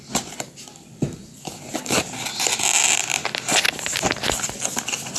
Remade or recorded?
recorded